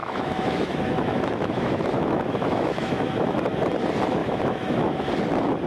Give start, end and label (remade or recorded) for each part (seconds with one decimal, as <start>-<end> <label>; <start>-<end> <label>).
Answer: 0.0-3.4 remade; 3.4-4.2 recorded; 4.2-5.1 remade; 5.1-5.7 recorded